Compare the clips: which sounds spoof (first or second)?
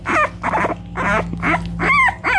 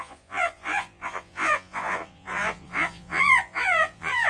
second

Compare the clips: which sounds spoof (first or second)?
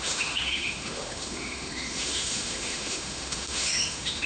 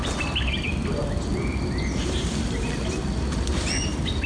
first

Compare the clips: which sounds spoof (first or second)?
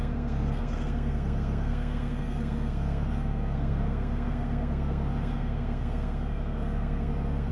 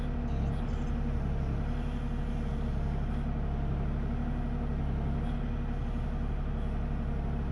first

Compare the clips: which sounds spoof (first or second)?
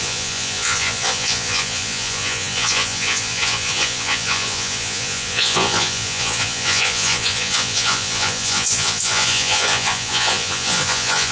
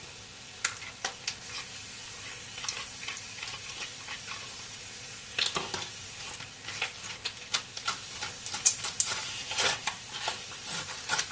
first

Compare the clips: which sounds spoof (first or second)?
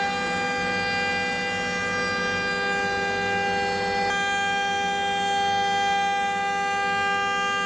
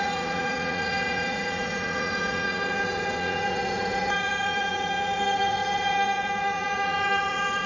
second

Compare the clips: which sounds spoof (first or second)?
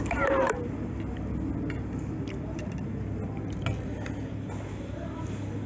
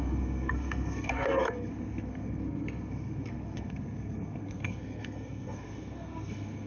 second